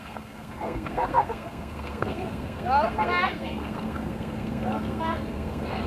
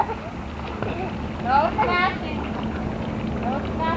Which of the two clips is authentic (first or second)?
second